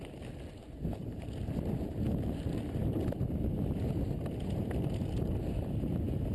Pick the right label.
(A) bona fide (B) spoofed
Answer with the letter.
A